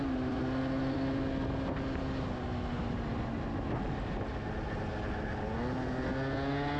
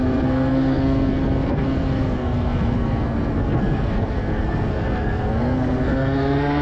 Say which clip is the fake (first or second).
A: second